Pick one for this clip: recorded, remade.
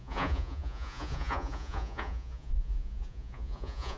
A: remade